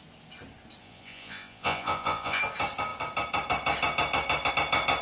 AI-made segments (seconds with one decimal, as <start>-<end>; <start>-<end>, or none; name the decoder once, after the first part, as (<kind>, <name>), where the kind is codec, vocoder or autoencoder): 0.8-2.4 (vocoder, Vocos)